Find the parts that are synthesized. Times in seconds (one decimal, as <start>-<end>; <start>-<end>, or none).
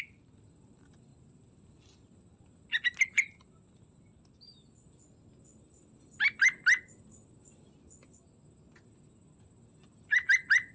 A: none